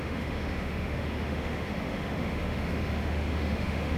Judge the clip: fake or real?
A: fake